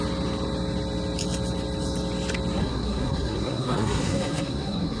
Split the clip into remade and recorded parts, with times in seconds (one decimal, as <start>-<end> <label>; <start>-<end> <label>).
0.0-2.6 recorded; 2.6-5.0 remade

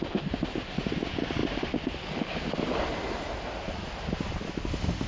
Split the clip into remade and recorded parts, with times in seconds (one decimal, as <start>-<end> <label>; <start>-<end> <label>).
0.0-5.1 recorded

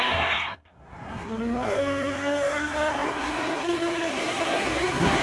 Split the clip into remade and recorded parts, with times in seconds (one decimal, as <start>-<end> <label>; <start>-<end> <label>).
0.0-5.2 remade

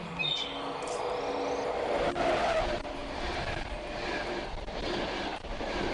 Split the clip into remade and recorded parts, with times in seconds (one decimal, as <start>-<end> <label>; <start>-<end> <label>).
0.0-5.9 recorded

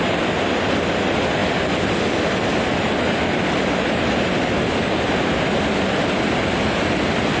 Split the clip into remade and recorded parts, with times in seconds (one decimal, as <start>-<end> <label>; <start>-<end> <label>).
0.0-7.4 recorded

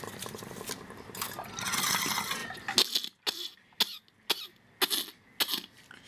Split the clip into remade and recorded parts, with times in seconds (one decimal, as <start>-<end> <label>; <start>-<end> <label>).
0.0-6.1 recorded